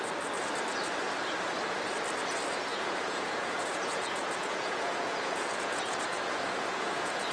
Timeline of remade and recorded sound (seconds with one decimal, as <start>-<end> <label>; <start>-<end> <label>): 0.0-2.7 recorded; 2.7-7.3 remade